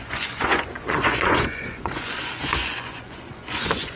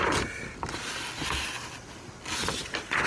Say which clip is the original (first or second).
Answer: second